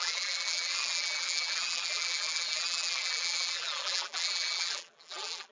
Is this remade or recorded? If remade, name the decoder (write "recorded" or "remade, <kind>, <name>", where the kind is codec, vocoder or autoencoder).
remade, vocoder, BigVGAN v2